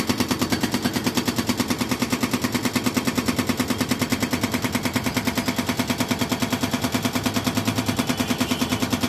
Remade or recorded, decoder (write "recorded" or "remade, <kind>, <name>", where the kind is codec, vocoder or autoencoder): recorded